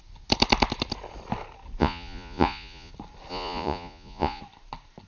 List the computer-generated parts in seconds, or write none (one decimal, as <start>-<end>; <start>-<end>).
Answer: 1.8-2.9; 3.3-4.4